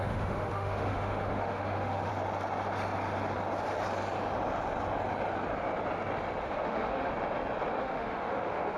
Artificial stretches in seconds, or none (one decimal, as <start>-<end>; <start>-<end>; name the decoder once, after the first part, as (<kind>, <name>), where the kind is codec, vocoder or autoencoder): 0.0-2.1 (autoencoder, DAC-VAE); 6.4-7.1; 7.8-8.8